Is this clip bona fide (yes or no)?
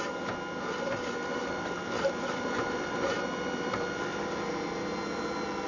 yes